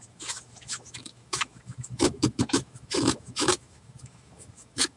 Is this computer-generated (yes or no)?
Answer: yes